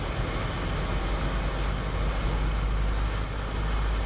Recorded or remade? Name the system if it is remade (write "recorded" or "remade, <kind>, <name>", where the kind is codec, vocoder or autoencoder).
recorded